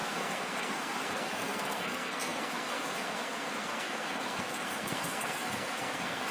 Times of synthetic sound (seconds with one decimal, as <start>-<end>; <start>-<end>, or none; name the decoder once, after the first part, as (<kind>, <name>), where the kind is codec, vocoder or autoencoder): 0.0-6.3 (codec, SNAC)